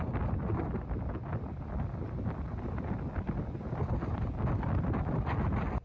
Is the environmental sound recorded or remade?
recorded